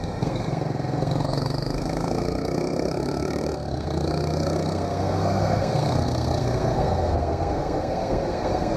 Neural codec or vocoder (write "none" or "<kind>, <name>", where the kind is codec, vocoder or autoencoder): codec, SNAC